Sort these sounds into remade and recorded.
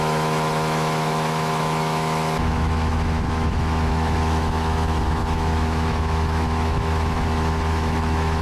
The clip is remade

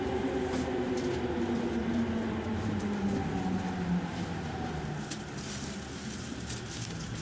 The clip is recorded